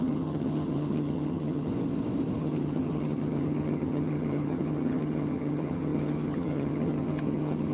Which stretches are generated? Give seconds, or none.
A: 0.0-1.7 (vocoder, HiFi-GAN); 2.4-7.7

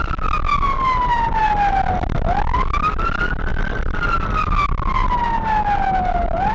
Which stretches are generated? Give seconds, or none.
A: none

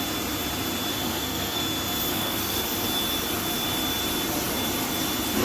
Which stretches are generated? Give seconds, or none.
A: 0.9-1.6 (codec, SNAC); 2.1-2.6

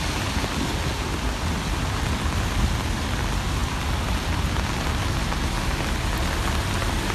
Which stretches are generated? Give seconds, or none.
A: none